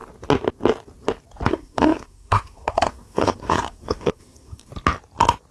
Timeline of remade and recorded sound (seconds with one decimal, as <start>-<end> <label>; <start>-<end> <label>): 0.0-1.5 recorded; 1.5-4.7 remade; 4.7-5.5 recorded